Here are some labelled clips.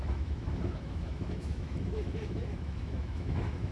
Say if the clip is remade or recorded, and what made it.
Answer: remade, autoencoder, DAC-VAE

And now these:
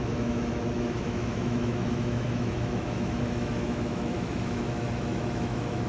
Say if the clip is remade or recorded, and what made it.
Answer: remade, autoencoder, DAC-VAE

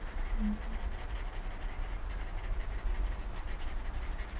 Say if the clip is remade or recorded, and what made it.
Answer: recorded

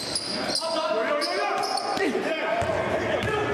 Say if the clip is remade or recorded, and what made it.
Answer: recorded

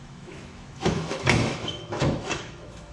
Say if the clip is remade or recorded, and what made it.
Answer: remade, autoencoder, DAC-VAE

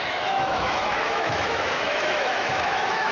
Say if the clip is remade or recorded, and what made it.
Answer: remade, autoencoder, DAC-VAE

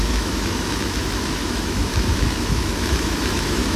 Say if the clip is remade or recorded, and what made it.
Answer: remade, autoencoder, DAC-VAE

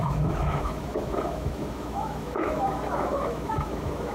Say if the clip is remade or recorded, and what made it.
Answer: remade, autoencoder, DAC-VAE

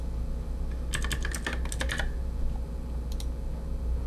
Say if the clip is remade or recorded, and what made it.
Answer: recorded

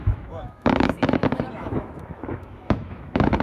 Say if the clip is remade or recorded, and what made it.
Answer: remade, autoencoder, DAC-VAE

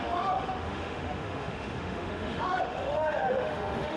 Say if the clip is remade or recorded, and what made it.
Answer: remade, autoencoder, DAC-VAE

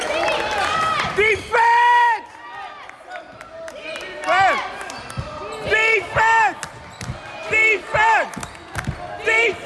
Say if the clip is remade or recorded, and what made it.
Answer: recorded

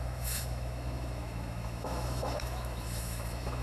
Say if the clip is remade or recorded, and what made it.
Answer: remade, autoencoder, DAC-VAE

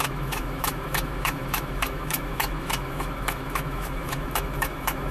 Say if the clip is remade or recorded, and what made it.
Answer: remade, autoencoder, DAC-VAE